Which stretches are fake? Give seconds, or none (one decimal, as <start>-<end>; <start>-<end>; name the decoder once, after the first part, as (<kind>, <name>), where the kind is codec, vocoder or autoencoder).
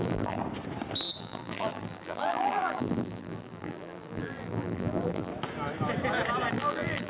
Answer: 0.0-0.4 (vocoder, BigVGAN v2); 1.2-5.3; 6.5-7.1